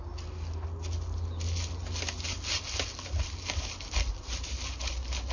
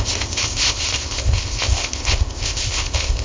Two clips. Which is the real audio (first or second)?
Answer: first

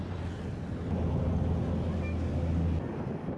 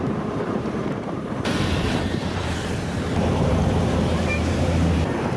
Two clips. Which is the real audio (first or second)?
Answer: first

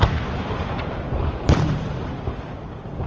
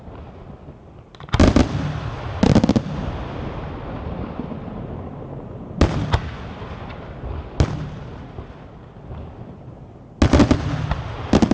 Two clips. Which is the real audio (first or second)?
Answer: second